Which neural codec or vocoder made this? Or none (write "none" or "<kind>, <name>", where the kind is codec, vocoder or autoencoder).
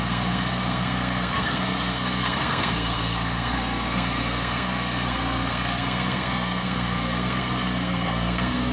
codec, SNAC